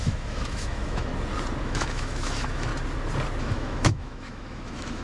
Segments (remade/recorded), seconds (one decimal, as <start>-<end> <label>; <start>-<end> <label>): 0.0-1.1 remade; 1.1-1.6 recorded; 1.6-2.7 remade; 2.7-3.4 recorded; 3.4-5.0 remade